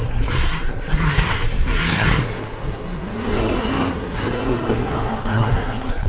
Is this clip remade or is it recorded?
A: remade